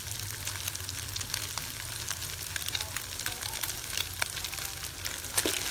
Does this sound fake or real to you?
real